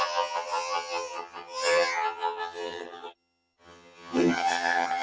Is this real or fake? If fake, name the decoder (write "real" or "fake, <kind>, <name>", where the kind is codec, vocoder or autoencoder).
fake, vocoder, HiFi-GAN